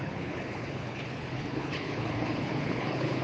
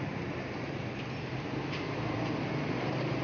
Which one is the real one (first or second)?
second